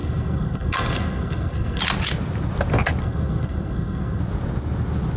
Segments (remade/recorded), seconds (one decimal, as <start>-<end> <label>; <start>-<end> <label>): 0.0-1.8 remade; 1.8-3.0 recorded; 3.0-4.2 remade; 4.2-5.2 recorded